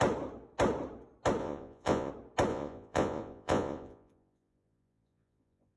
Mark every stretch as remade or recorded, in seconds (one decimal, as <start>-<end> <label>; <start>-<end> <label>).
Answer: 0.0-1.4 recorded; 1.4-2.1 remade; 2.1-2.5 recorded; 2.5-5.8 remade